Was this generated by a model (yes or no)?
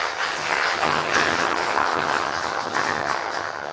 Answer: yes